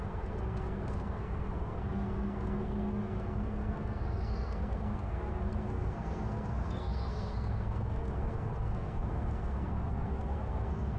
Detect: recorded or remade remade